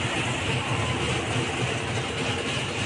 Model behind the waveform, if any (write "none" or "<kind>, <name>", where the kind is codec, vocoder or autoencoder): none